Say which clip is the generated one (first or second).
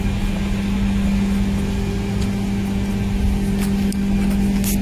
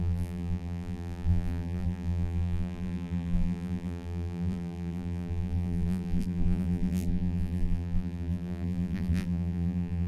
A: second